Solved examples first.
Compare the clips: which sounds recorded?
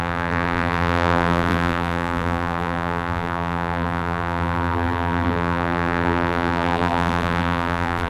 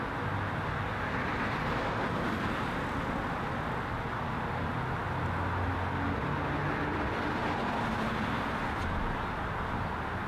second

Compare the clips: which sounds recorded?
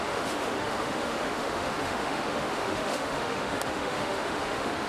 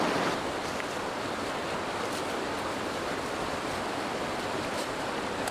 second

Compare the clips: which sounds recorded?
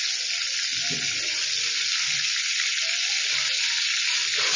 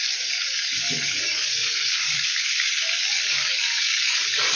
first